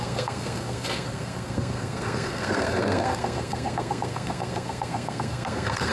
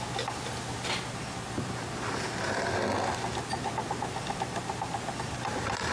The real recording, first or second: second